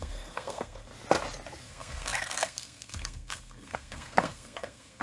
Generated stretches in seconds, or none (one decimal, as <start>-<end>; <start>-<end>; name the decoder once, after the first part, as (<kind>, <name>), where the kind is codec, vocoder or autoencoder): 0.0-0.9 (codec, SNAC); 1.6-5.0